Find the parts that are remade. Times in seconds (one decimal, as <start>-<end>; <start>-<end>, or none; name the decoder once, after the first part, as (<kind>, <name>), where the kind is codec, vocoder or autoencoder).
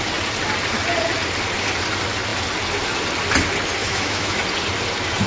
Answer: 3.8-4.4 (autoencoder, DAC-VAE)